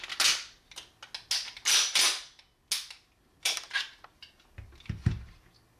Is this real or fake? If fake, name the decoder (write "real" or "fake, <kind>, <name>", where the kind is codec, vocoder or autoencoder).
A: real